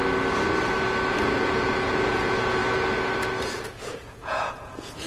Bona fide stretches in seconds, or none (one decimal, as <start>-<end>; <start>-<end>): 0.0-1.1; 2.6-3.5